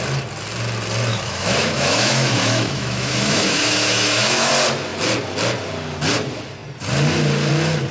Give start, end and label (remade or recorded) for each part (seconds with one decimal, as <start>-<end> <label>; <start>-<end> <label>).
0.0-1.1 recorded; 1.1-4.5 remade; 4.5-7.9 recorded